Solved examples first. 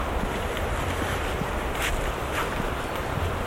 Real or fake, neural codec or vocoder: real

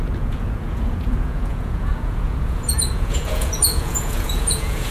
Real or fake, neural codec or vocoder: fake, vocoder, Vocos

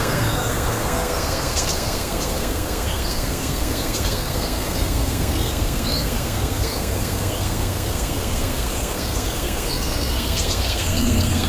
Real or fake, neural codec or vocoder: fake, codec, SNAC